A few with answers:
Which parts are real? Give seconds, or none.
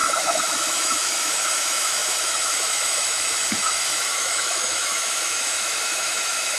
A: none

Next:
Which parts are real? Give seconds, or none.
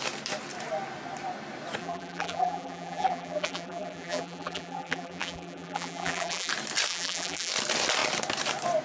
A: 0.0-1.8; 6.5-6.9; 7.5-8.8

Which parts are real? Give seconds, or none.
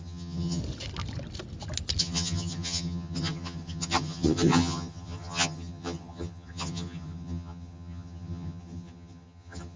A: 0.6-2.0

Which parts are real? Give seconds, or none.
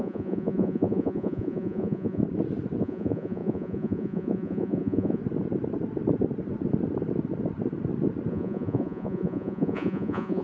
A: 2.2-2.8; 5.2-8.3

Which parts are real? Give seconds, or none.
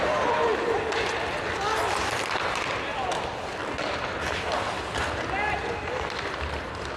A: 0.0-7.0